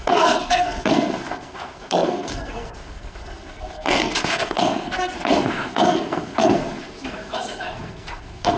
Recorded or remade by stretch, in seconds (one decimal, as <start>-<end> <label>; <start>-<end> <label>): 0.0-8.6 remade